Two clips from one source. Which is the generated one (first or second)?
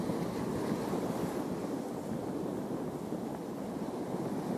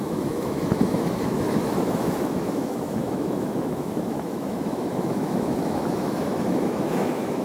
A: second